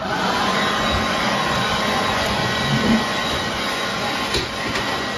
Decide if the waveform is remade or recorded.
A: remade